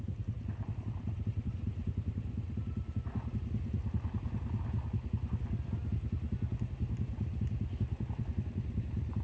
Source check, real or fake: real